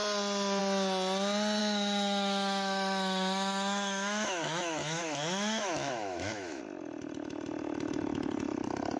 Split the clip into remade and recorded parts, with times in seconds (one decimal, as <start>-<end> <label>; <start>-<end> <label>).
0.0-1.6 recorded; 1.6-6.6 remade; 6.6-9.0 recorded